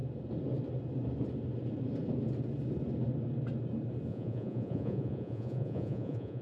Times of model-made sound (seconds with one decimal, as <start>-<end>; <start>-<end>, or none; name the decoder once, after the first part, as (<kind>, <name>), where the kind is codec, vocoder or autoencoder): 4.1-6.4 (vocoder, Vocos)